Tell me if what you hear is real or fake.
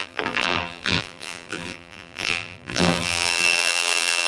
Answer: fake